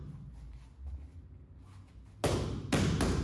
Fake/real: real